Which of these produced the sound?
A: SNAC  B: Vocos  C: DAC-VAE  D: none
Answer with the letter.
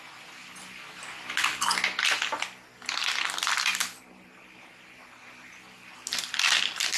D